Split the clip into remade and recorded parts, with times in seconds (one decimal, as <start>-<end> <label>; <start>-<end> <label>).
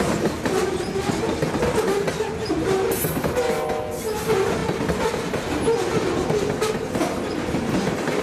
0.0-8.2 recorded